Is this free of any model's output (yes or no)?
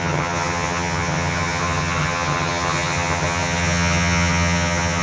no